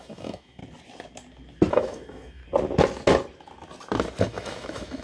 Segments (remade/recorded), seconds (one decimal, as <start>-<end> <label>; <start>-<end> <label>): 0.0-0.6 remade; 0.6-1.7 recorded; 1.7-2.4 remade; 2.4-4.2 recorded; 4.2-5.0 remade